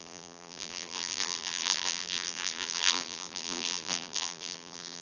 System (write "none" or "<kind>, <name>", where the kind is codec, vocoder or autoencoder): vocoder, BigVGAN v2